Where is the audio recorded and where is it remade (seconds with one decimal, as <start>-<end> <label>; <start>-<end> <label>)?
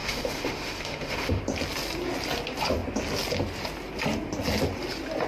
0.0-1.4 remade; 1.4-5.3 recorded